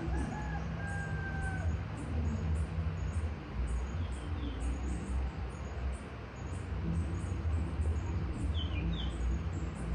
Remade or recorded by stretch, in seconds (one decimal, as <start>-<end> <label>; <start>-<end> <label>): 0.0-7.9 recorded; 7.9-8.7 remade; 8.7-9.9 recorded